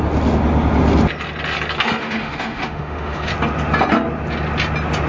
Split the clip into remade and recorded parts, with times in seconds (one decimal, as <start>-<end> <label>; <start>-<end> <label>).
0.0-2.0 recorded; 2.0-3.3 remade; 3.3-5.1 recorded